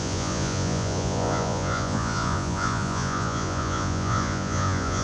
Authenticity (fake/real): fake